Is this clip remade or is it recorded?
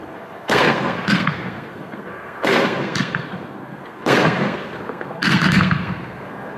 remade